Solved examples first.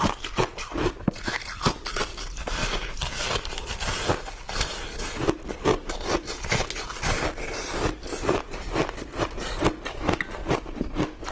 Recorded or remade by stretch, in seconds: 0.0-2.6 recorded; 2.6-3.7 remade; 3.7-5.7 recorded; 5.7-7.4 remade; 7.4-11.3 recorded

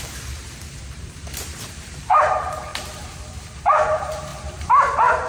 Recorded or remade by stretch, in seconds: 0.0-2.7 remade; 2.7-3.4 recorded; 3.4-5.3 remade

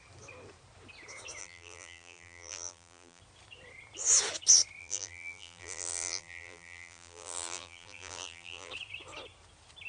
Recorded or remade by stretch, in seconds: 0.0-1.4 recorded; 1.4-3.2 remade; 3.2-4.8 recorded; 4.8-8.7 remade; 8.7-9.9 recorded

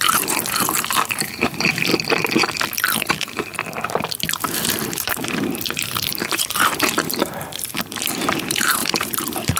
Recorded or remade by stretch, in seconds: 0.0-1.9 remade; 1.9-3.1 recorded; 3.1-3.5 remade; 3.5-4.4 recorded; 4.4-9.6 remade